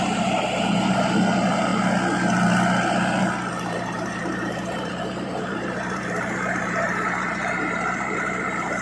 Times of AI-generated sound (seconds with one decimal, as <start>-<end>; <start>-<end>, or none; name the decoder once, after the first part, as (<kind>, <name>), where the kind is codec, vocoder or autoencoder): 0.0-1.7 (vocoder, BigVGAN v2); 3.5-8.8